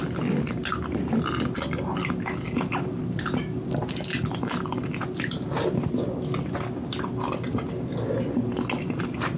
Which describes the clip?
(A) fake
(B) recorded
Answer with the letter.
B